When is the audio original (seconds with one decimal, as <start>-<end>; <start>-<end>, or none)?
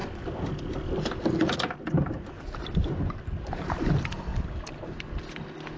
0.0-4.3; 5.1-5.8